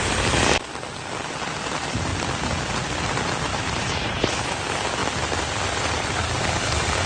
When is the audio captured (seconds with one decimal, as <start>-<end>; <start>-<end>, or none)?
0.0-3.5; 4.6-7.1